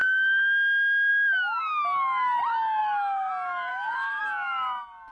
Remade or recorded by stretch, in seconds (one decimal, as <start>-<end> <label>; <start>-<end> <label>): 0.0-2.8 recorded; 2.8-3.3 remade; 3.3-3.7 recorded; 3.7-4.2 remade; 4.2-5.1 recorded